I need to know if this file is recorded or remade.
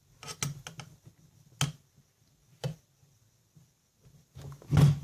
recorded